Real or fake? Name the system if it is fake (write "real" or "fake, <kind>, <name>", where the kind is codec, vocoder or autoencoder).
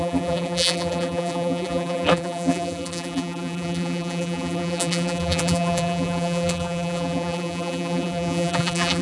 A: fake, vocoder, BigVGAN v2